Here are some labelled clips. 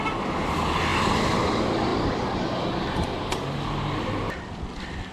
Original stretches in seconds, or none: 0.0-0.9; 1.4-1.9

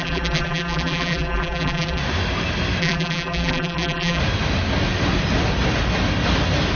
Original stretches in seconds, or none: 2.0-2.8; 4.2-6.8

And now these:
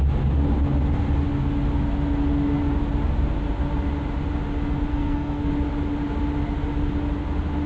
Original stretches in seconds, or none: 0.0-4.9; 5.5-7.7